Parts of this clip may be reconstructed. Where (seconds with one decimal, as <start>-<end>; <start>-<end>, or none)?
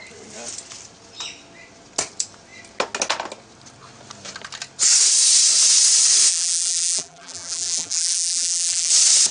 6.3-8.9